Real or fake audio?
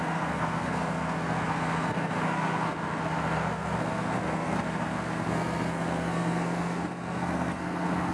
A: fake